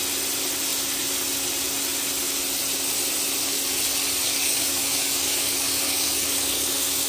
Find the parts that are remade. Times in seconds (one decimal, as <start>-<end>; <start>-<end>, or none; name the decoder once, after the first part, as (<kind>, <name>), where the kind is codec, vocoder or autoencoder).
4.3-7.1 (codec, DAC)